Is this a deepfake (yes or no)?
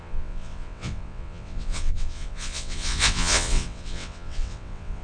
yes